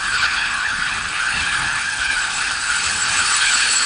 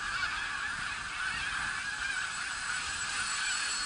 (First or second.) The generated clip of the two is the first